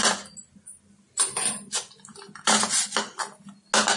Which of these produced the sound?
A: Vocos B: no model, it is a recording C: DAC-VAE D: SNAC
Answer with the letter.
B